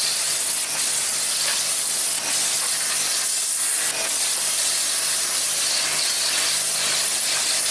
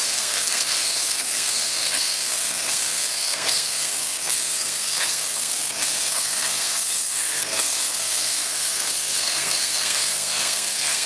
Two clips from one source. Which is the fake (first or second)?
second